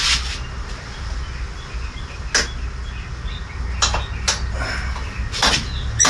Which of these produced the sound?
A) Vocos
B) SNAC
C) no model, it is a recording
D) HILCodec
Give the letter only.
C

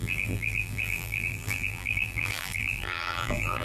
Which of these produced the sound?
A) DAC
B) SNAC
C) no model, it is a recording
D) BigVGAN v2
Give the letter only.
D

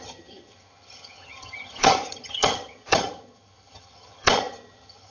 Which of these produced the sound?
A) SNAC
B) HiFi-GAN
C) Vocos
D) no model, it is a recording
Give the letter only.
B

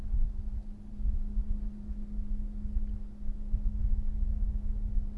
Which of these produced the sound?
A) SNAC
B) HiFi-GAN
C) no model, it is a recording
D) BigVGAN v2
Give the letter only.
C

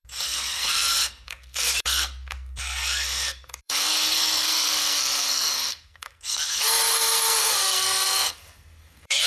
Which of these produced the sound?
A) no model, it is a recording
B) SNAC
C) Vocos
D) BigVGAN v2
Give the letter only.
B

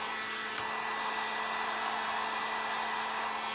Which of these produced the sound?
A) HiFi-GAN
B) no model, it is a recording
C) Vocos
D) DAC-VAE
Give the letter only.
B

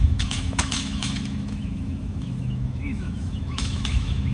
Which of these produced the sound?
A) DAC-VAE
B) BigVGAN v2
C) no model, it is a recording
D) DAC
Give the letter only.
A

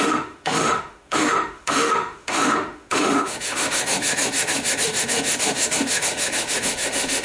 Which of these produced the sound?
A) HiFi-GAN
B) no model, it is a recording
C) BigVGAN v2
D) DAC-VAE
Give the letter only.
D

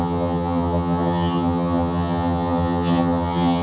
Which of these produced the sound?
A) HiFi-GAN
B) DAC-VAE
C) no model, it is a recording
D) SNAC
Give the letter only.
A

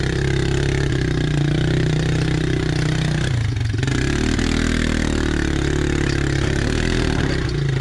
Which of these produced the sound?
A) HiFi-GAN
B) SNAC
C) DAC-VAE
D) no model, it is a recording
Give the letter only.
D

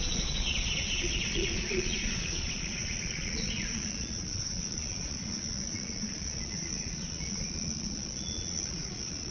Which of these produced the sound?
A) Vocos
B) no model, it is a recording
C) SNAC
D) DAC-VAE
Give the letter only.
A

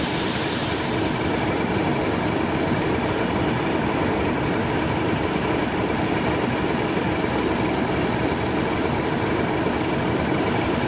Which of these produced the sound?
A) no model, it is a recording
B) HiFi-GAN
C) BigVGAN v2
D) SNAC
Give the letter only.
A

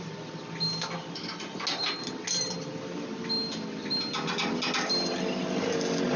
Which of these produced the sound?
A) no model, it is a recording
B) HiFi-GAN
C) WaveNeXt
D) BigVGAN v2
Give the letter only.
A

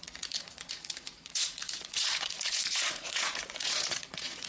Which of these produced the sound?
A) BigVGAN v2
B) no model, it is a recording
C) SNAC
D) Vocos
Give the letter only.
D